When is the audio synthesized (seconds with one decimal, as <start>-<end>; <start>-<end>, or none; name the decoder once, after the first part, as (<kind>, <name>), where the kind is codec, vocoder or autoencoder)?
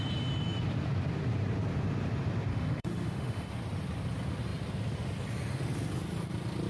2.5-3.5 (autoencoder, DAC-VAE)